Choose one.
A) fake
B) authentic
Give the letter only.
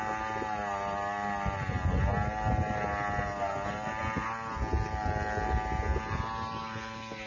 B